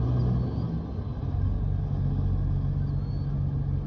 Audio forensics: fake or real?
real